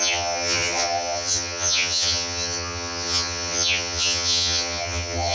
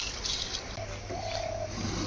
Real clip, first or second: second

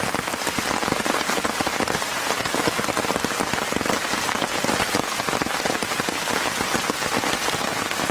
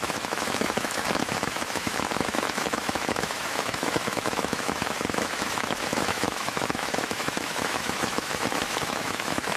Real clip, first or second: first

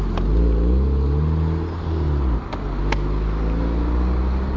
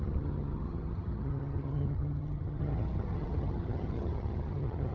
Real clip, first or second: first